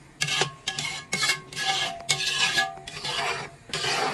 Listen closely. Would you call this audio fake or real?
real